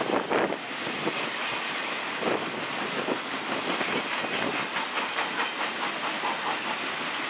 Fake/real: real